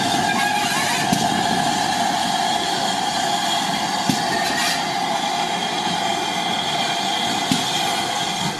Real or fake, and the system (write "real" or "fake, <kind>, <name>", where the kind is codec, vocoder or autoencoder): real